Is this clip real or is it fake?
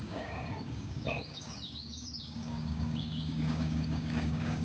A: fake